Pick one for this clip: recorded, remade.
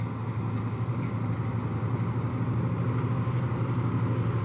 recorded